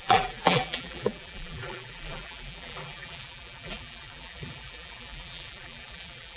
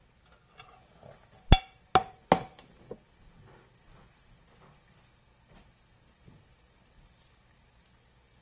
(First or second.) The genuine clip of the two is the second